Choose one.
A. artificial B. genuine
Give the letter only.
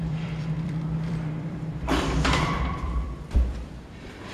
A